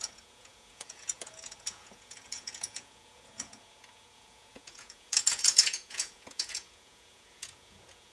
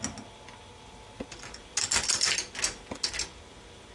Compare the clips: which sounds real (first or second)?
second